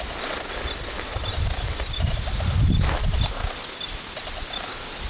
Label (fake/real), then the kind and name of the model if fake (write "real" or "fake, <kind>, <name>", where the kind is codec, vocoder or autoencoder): real